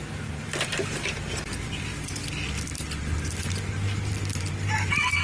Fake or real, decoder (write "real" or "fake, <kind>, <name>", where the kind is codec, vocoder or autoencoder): real